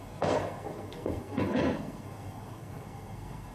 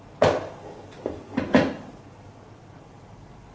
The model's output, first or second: first